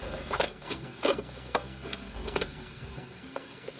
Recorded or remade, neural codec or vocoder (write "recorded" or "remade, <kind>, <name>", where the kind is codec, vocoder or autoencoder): remade, codec, SNAC